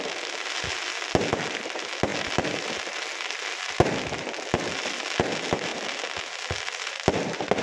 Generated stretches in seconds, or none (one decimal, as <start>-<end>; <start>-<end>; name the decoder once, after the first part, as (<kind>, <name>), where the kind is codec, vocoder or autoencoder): none